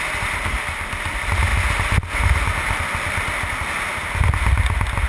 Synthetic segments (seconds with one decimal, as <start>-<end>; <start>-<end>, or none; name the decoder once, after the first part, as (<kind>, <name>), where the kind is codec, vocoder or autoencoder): none